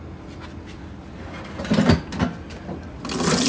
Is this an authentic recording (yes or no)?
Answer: yes